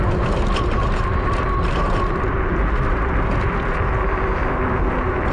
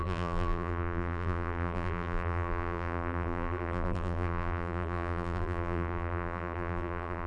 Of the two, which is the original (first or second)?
first